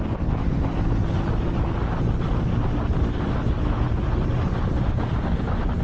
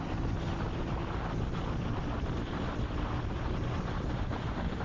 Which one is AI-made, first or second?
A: second